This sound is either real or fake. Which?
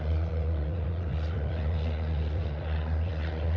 fake